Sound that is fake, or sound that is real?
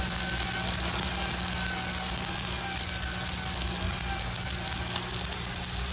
real